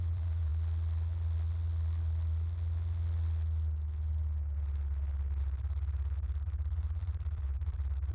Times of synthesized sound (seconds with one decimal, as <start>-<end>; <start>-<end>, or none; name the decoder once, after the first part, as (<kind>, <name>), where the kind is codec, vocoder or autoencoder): 0.0-0.5 (vocoder, BigVGAN v2); 5.4-8.1